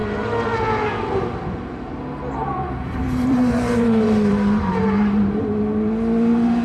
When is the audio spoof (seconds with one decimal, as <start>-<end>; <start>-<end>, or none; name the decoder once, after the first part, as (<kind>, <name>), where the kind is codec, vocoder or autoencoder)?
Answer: 2.4-5.4 (vocoder, BigVGAN v2)